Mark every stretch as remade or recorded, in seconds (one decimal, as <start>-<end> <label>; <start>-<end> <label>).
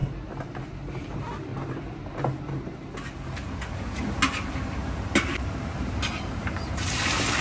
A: 0.0-1.0 recorded; 1.0-1.5 remade; 1.5-5.3 recorded; 5.3-7.4 remade